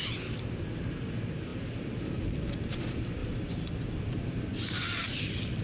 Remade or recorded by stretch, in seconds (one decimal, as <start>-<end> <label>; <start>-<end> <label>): 0.0-1.5 recorded; 1.5-2.3 remade; 2.3-3.2 recorded; 3.2-5.6 remade